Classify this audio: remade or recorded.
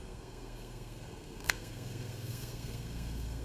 remade